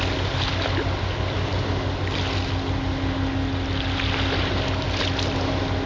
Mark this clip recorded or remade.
recorded